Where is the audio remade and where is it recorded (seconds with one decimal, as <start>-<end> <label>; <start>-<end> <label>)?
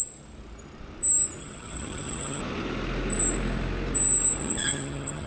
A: 0.0-1.4 recorded; 1.4-2.4 remade; 2.4-4.4 recorded; 4.4-5.3 remade